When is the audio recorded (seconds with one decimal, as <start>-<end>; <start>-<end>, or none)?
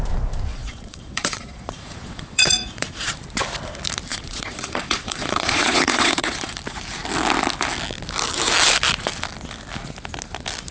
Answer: 0.0-0.5; 3.2-4.1; 6.6-10.7